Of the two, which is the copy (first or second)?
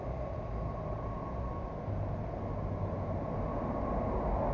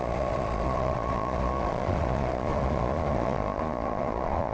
second